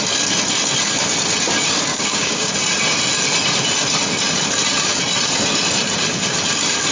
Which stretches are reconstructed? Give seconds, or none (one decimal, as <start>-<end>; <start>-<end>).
1.9-2.5